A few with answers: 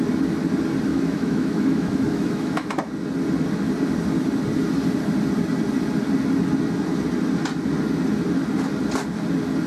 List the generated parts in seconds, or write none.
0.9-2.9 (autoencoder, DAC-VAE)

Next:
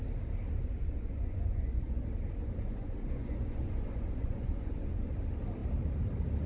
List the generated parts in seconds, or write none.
0.6-2.0 (vocoder, Vocos); 2.4-5.1

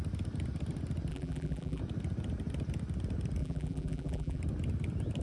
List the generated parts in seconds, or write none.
1.1-1.8 (vocoder, BigVGAN v2); 3.4-4.4

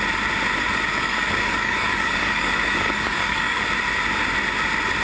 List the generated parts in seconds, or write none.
0.9-3.6 (codec, DAC)

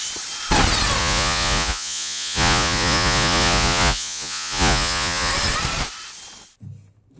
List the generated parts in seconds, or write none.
1.0-5.3 (vocoder, Vocos)